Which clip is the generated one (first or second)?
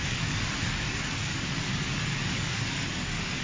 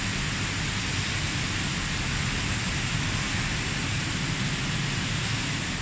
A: first